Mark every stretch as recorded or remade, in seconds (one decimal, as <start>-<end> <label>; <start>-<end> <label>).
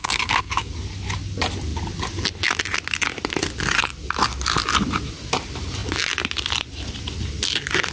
0.0-0.7 remade; 0.7-7.9 recorded